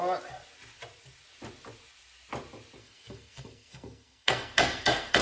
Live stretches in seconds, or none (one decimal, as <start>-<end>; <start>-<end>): 0.0-2.8